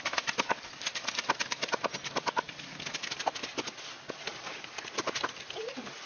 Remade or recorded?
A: recorded